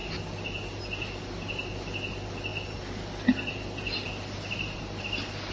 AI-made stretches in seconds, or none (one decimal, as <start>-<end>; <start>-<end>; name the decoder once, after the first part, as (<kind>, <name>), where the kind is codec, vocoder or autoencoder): none